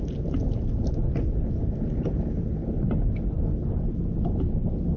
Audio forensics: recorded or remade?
recorded